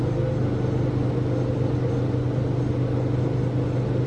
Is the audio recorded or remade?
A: recorded